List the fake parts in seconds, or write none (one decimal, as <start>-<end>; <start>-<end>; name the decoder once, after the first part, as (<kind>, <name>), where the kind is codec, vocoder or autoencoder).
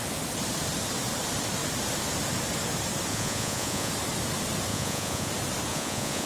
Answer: 3.1-3.9 (vocoder, Vocos); 4.7-5.3; 5.7-6.3